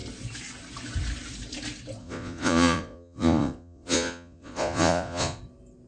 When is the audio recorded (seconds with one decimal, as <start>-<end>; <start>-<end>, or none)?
0.0-2.0; 5.4-5.9